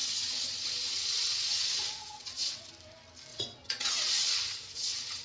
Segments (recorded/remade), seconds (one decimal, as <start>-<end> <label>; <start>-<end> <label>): 0.0-2.7 remade; 2.7-3.3 recorded; 3.3-5.2 remade